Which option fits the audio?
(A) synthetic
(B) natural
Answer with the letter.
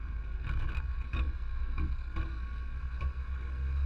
A